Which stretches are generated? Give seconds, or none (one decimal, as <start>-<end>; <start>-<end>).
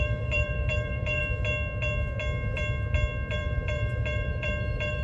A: 0.0-1.2; 3.3-5.0